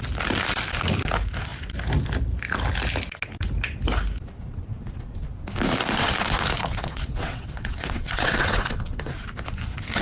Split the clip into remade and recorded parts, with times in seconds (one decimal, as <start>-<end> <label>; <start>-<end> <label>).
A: 0.0-6.6 recorded; 6.6-8.6 remade; 8.6-10.0 recorded